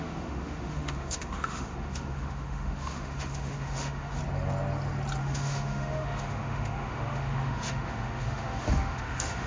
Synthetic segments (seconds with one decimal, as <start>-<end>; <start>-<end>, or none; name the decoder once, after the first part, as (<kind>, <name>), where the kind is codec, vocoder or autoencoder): 0.0-4.2 (autoencoder, DAC-VAE); 5.2-9.5